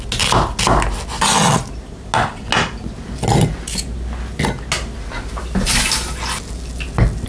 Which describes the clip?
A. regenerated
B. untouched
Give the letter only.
B